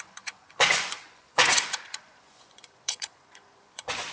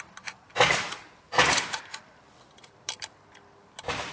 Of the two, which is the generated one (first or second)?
first